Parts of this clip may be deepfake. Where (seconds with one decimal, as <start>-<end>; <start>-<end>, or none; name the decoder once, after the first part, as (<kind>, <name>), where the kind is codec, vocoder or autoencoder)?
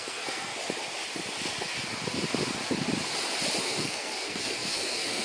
0.0-0.5 (codec, SNAC); 3.6-5.2